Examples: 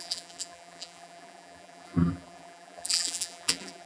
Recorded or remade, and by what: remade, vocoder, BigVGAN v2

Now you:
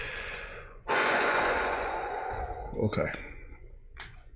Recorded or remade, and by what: remade, vocoder, Vocos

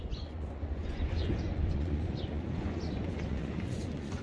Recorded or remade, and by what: remade, vocoder, Vocos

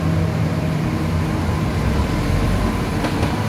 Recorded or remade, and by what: remade, vocoder, BigVGAN v2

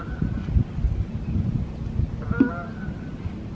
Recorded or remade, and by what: recorded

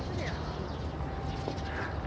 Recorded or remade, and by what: recorded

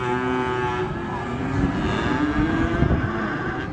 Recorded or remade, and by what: recorded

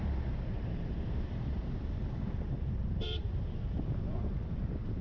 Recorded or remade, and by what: remade, vocoder, BigVGAN v2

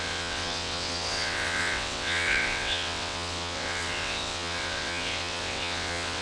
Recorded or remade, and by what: remade, vocoder, WaveNeXt